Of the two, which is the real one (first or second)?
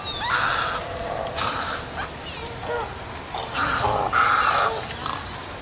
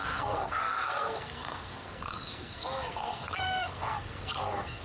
first